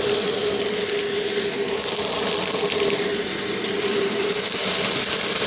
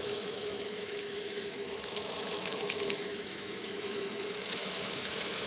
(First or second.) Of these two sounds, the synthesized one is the second